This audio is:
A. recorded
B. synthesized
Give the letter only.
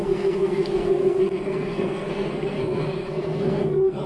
B